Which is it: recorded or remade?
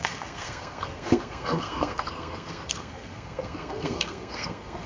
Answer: remade